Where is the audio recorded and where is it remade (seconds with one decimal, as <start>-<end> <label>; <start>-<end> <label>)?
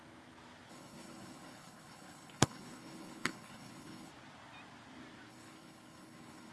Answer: 0.0-0.7 recorded; 0.7-4.1 remade; 4.1-5.3 recorded; 5.3-6.5 remade